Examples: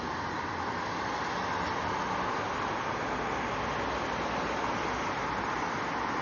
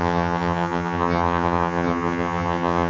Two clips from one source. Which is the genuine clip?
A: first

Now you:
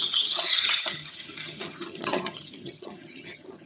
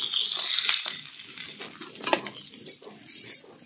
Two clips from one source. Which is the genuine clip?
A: second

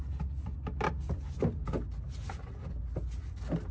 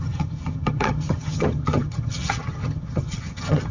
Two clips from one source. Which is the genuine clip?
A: first